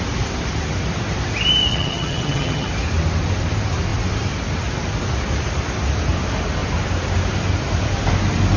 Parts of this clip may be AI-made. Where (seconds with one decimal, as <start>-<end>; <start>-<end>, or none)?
1.7-2.7